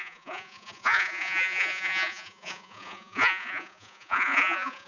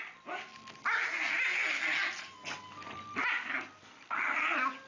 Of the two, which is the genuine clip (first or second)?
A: second